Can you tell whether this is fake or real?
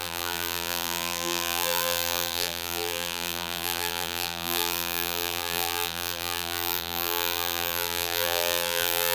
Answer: fake